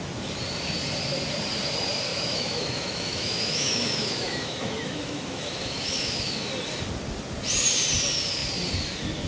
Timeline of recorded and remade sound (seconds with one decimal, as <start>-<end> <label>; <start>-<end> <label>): 0.0-2.1 recorded; 2.1-6.5 remade; 6.5-9.3 recorded